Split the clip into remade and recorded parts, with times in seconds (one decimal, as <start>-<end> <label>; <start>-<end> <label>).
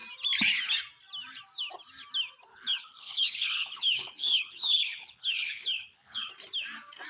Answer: 0.0-2.5 recorded; 2.5-6.3 remade; 6.3-7.1 recorded